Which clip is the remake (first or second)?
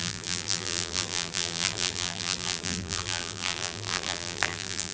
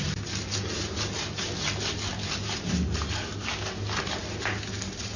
first